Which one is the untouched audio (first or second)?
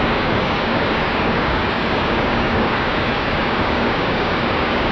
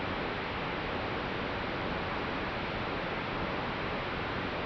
second